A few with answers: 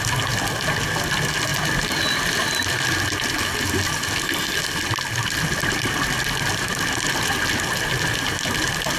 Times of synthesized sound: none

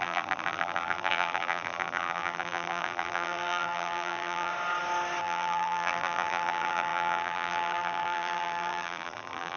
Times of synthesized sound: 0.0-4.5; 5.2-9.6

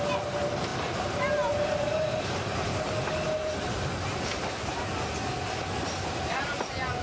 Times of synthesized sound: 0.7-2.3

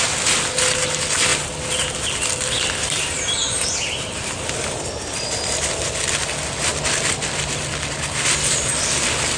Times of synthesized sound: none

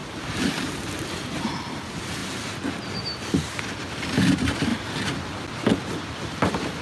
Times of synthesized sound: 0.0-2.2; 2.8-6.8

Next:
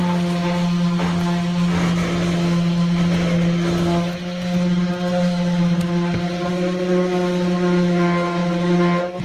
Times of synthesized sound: none

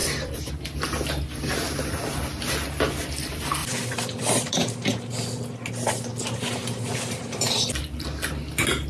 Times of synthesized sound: 0.0-0.5; 3.6-4.5